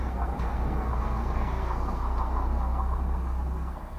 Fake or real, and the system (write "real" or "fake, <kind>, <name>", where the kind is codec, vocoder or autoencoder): fake, codec, SNAC